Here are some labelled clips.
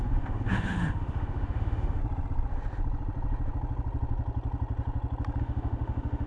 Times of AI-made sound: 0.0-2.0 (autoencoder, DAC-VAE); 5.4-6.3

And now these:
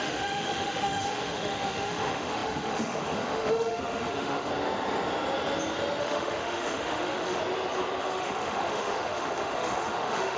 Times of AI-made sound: 0.0-4.5 (autoencoder, DAC-VAE); 6.0-7.4; 8.0-10.4

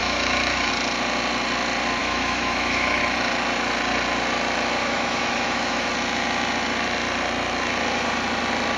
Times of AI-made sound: 0.0-0.7 (autoencoder, DAC-VAE); 2.0-3.0; 4.8-5.9

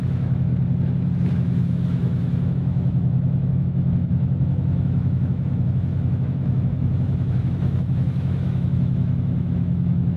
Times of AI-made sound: 0.0-0.5 (autoencoder, DAC-VAE); 1.3-10.2

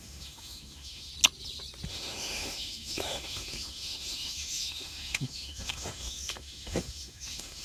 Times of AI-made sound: 0.0-1.1 (autoencoder, DAC-VAE); 1.9-7.6

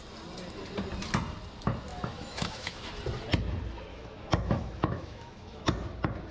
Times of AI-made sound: 1.9-2.9 (autoencoder, DAC-VAE); 3.9-5.7

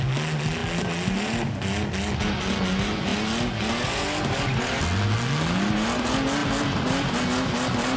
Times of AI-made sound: none

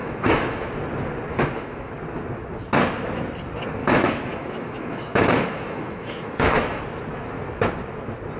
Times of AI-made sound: 0.0-0.7 (autoencoder, DAC-VAE); 1.3-1.9; 3.8-6.8